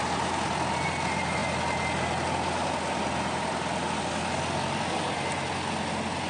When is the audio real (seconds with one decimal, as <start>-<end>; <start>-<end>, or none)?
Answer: 0.0-6.3